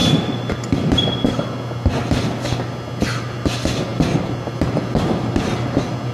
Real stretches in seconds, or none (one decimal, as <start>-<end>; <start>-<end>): 0.0-6.1